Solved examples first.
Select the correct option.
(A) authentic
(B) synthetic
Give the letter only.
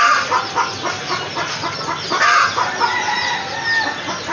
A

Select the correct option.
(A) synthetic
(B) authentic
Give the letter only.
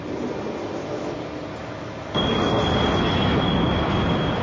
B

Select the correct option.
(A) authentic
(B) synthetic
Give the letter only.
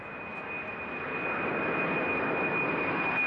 A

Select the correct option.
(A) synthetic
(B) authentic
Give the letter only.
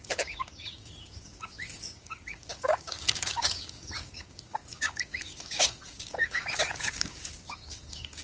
A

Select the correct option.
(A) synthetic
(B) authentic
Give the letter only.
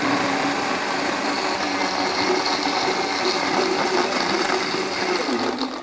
B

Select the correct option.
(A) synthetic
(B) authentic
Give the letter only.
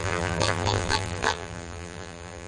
A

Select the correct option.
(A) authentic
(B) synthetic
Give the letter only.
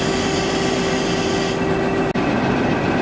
A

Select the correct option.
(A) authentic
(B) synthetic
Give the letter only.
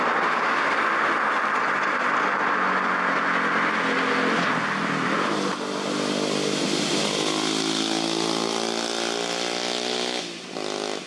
A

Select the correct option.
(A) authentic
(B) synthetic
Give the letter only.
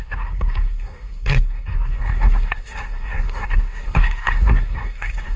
B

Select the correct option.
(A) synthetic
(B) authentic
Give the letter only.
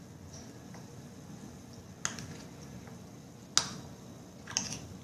B